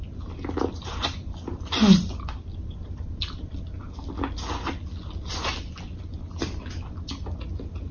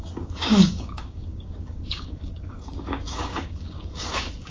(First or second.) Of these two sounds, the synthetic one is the second